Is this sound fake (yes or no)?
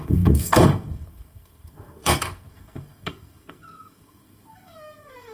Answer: yes